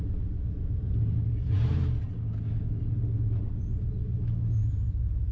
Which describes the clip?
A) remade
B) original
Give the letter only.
B